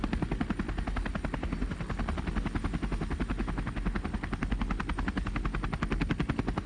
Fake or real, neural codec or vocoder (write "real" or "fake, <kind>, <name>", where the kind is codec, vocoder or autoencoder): real